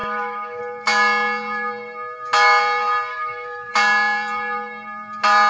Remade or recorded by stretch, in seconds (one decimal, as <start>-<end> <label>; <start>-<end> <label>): 0.0-0.6 remade; 0.6-3.1 recorded; 3.1-3.7 remade; 3.7-5.5 recorded